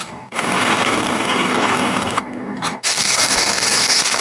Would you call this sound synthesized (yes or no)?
yes